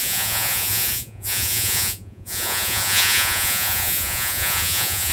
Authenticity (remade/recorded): remade